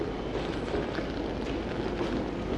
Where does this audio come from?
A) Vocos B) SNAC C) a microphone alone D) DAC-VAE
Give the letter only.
C